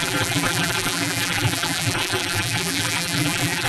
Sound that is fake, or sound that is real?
fake